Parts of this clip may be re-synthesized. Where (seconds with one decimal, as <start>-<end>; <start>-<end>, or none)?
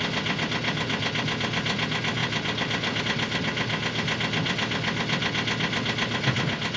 2.2-3.0